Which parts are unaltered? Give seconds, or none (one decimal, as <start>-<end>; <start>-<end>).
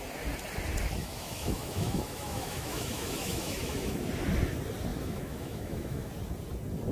0.0-1.0; 4.0-4.9; 6.1-6.9